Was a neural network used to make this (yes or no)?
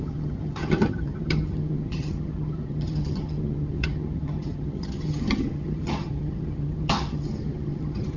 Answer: yes